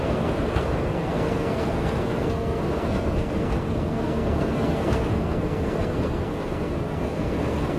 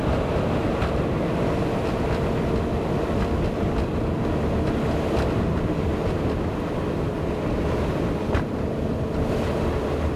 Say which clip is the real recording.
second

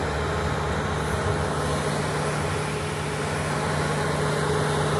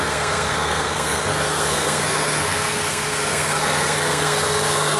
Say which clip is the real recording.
first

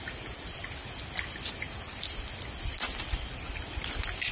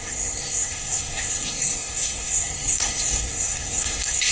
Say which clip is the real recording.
first